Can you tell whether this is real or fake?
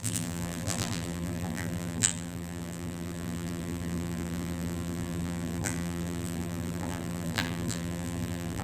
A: fake